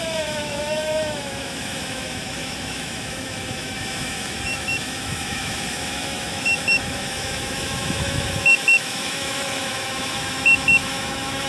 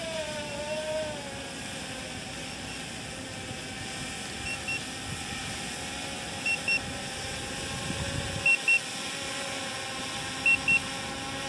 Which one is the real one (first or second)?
second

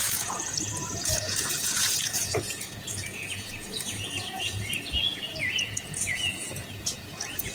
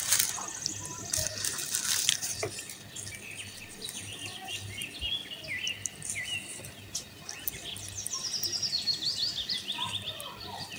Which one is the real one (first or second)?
second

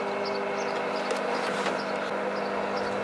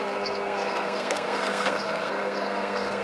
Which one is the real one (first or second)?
first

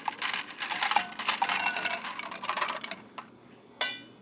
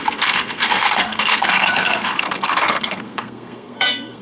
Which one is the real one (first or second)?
first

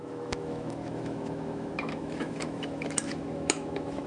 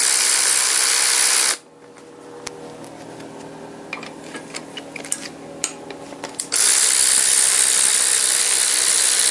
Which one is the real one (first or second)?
second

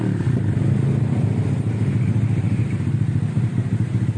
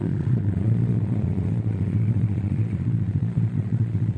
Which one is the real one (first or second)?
first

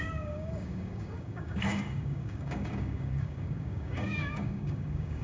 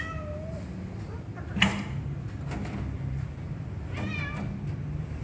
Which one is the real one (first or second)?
second